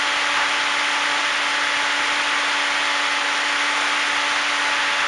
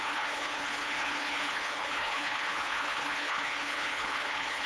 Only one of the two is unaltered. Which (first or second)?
first